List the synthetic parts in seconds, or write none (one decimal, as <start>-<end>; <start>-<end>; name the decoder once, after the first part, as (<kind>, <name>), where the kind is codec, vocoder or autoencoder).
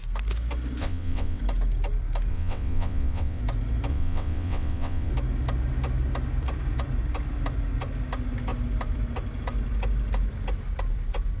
0.8-1.4 (vocoder, WaveNeXt); 2.3-3.4; 3.9-5.1